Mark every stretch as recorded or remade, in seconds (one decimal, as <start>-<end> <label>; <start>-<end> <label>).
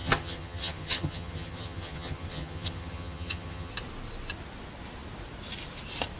0.0-3.7 remade; 3.7-6.2 recorded